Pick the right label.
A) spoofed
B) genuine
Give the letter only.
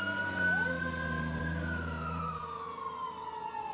B